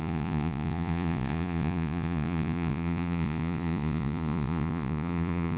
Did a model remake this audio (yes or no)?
yes